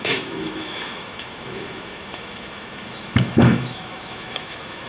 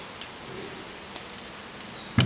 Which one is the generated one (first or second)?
first